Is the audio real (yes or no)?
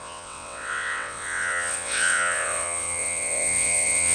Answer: no